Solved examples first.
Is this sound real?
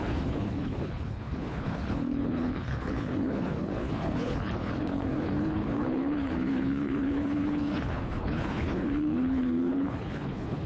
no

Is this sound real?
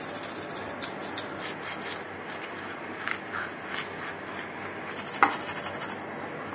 yes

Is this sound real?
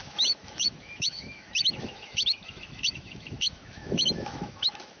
no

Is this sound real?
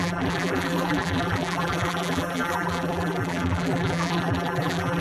no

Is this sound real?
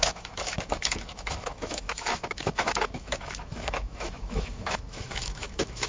no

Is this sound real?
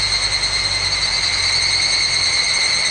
yes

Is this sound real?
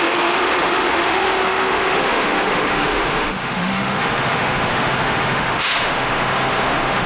no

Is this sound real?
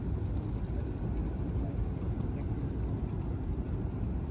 yes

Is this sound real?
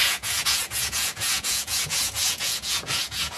no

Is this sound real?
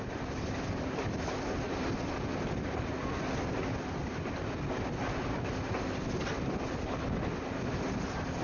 yes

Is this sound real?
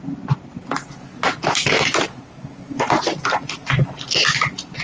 yes